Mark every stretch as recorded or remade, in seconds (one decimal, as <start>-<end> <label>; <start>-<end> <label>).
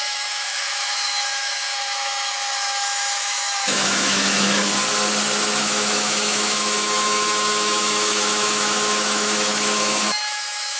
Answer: 0.0-4.7 remade; 4.7-5.6 recorded; 5.6-10.8 remade